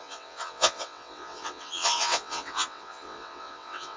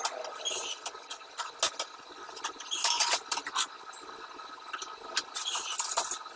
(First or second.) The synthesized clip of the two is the first